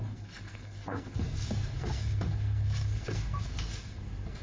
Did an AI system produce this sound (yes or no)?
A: yes